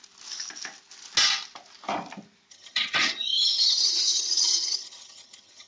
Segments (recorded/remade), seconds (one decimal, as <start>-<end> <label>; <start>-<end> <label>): 0.0-2.5 recorded; 2.5-5.7 remade

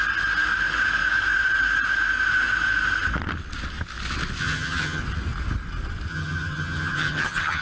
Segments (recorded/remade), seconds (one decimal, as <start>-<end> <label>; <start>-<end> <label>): 0.0-4.4 recorded; 4.4-5.0 remade; 5.0-6.1 recorded; 6.1-7.6 remade

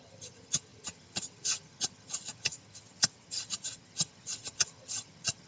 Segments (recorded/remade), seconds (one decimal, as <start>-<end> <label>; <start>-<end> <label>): 0.0-5.5 remade

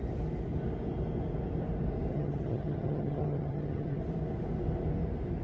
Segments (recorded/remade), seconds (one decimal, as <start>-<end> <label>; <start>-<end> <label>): 0.0-2.1 recorded; 2.1-4.0 remade; 4.0-5.4 recorded

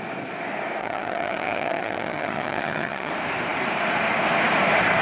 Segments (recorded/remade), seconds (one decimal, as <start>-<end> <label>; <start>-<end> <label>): 0.0-0.8 recorded; 0.8-3.1 remade; 3.1-5.0 recorded

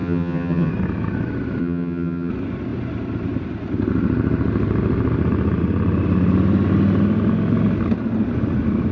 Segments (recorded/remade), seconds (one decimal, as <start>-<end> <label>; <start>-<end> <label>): 0.0-0.7 remade; 0.7-1.6 recorded; 1.6-2.3 remade; 2.3-8.9 recorded

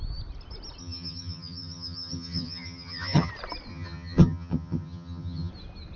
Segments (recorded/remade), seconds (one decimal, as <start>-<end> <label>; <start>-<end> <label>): 0.0-0.8 recorded; 0.8-3.3 remade; 3.3-3.7 recorded; 3.7-5.5 remade; 5.5-6.0 recorded